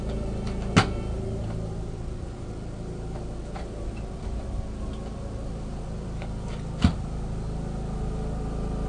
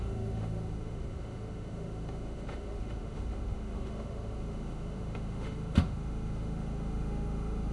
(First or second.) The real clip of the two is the first